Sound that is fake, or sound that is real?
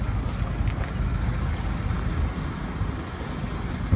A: real